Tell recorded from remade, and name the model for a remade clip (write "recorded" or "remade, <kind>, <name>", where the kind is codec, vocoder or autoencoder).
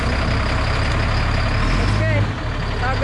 recorded